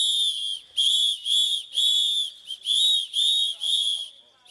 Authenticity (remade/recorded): recorded